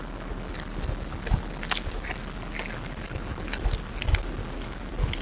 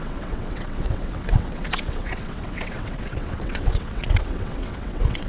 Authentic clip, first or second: first